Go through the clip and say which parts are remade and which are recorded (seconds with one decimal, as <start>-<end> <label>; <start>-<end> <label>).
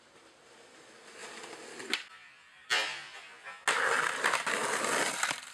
0.0-5.5 recorded